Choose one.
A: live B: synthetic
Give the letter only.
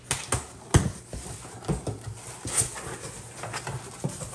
A